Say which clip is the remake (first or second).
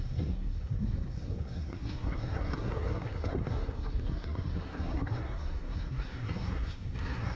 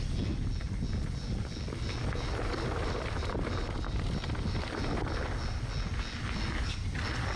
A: first